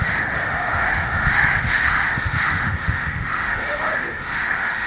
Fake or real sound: fake